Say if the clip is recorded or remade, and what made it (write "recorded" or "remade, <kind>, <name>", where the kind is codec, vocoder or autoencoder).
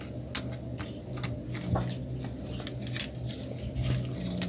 recorded